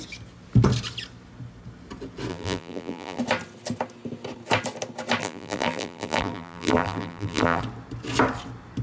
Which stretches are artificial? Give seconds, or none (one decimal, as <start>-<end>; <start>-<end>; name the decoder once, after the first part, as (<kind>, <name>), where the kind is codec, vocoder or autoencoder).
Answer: 2.3-3.2 (vocoder, BigVGAN v2); 5.2-7.6